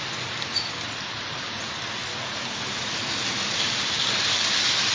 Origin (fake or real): real